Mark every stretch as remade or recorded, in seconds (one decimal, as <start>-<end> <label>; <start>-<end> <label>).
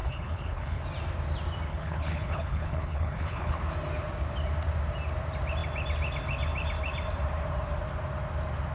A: 0.0-0.8 remade; 0.8-1.7 recorded; 1.7-3.6 remade; 3.6-8.7 recorded